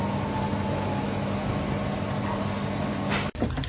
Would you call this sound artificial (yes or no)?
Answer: no